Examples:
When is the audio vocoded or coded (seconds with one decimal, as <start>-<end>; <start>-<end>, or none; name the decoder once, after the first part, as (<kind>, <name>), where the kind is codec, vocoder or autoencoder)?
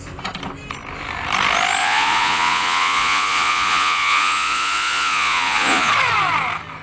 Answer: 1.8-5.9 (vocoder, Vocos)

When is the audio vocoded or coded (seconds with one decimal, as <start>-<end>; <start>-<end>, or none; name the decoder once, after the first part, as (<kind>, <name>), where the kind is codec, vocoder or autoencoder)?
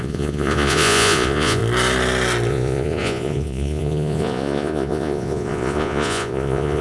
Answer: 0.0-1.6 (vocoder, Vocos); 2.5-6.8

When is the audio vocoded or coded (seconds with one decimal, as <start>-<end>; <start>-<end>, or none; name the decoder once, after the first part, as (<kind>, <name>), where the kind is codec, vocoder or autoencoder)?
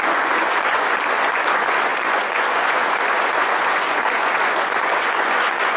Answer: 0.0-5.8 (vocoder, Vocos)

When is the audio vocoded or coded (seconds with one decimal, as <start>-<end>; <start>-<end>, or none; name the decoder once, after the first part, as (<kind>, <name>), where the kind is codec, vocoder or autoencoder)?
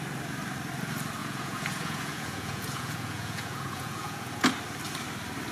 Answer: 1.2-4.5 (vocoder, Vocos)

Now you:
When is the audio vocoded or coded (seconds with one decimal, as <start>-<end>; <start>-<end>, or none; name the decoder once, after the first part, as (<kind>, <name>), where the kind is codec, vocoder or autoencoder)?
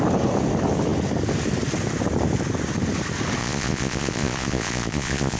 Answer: 3.4-5.4 (vocoder, Vocos)